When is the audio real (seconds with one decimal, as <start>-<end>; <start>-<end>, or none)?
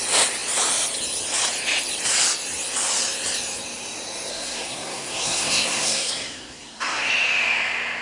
0.0-4.3; 7.1-8.0